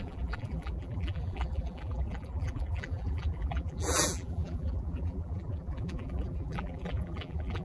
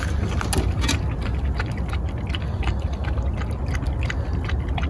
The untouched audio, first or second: second